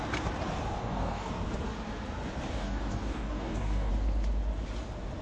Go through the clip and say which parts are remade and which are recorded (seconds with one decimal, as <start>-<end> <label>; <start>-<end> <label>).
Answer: 0.0-0.8 recorded; 0.8-1.3 remade; 1.3-2.5 recorded; 2.5-3.9 remade; 3.9-5.2 recorded